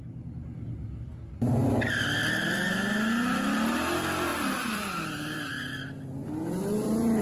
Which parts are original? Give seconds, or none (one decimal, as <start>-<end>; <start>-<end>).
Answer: 0.0-4.3; 5.7-7.2